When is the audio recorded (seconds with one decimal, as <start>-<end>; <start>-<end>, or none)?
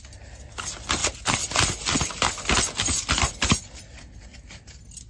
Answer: 0.0-5.1